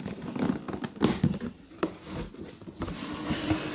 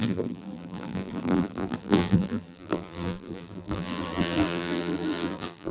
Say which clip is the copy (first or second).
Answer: second